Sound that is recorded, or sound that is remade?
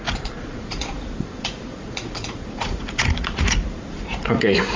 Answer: remade